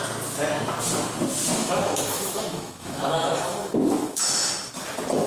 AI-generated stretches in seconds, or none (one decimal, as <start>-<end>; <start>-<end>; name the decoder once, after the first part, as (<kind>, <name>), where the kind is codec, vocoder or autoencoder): 1.6-4.5 (autoencoder, DAC-VAE)